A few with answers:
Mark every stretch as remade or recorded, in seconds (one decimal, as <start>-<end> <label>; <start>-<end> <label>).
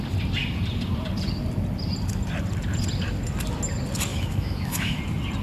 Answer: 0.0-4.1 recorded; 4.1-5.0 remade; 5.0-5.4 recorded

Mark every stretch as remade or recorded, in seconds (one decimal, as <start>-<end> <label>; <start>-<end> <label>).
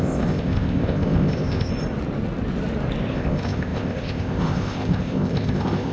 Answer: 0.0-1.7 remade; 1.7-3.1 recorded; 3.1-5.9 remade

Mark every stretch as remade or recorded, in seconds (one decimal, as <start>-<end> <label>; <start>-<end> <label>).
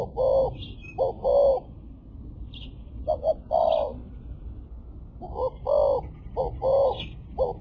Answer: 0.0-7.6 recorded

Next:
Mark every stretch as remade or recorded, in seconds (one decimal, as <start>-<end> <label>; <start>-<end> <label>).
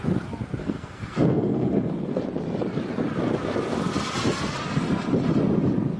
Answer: 0.0-0.6 recorded; 0.6-2.2 remade; 2.2-6.0 recorded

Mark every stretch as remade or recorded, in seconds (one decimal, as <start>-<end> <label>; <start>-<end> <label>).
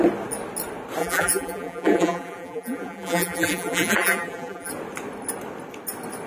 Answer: 0.0-1.0 recorded; 1.0-4.7 remade; 4.7-6.3 recorded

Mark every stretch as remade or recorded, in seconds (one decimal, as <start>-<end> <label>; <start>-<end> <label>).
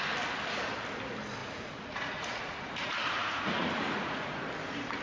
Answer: 0.0-1.4 recorded; 1.4-4.4 remade; 4.4-5.0 recorded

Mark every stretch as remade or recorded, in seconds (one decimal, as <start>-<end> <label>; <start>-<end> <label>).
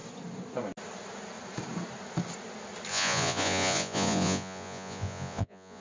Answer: 0.0-2.9 recorded; 2.9-5.8 remade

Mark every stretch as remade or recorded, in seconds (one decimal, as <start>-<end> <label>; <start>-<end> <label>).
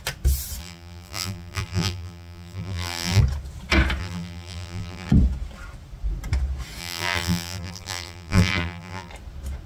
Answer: 0.0-0.6 recorded; 0.6-3.2 remade; 3.2-4.0 recorded; 4.0-5.1 remade; 5.1-6.8 recorded; 6.8-9.1 remade; 9.1-9.7 recorded